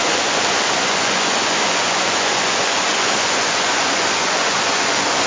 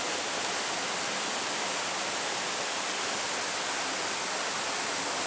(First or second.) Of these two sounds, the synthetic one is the first